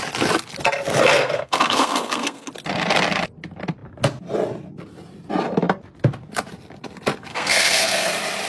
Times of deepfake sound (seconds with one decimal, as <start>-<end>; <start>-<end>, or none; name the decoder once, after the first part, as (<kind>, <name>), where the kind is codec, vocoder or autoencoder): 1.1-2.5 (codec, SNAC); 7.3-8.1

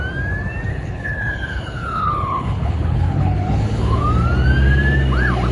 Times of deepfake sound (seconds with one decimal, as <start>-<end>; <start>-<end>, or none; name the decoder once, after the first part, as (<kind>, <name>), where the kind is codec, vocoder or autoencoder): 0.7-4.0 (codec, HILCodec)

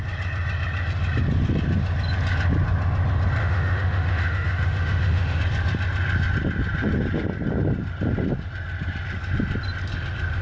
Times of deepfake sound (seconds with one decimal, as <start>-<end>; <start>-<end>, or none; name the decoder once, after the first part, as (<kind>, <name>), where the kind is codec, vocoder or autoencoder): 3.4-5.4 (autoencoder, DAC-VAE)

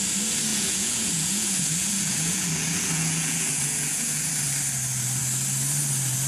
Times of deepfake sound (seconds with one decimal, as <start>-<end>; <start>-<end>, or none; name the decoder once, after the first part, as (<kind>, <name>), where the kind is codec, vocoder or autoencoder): 0.5-4.3 (vocoder, Vocos)

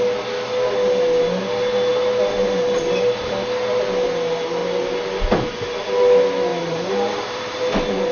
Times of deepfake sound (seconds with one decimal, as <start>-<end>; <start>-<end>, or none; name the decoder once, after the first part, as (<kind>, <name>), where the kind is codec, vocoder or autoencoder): 6.5-7.6 (vocoder, BigVGAN v2)

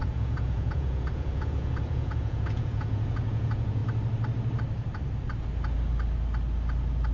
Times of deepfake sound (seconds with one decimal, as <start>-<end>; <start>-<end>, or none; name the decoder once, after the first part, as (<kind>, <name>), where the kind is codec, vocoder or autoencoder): 0.0-3.8 (vocoder, Vocos)